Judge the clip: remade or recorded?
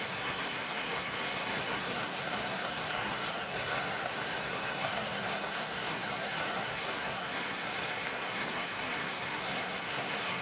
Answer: remade